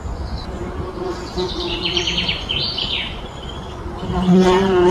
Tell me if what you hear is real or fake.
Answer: fake